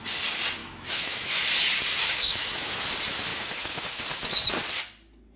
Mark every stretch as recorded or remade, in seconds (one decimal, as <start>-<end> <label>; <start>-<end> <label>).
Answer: 0.0-0.6 recorded; 0.6-1.4 remade; 1.4-1.9 recorded; 1.9-2.8 remade; 2.8-3.3 recorded; 3.3-4.0 remade; 4.0-5.4 recorded